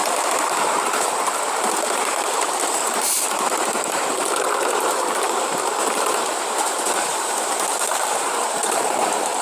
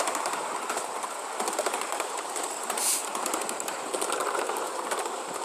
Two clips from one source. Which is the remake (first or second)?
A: first